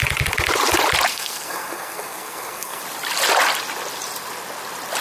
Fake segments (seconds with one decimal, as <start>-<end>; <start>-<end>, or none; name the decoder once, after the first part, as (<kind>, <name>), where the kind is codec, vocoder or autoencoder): 1.1-2.8 (codec, SNAC)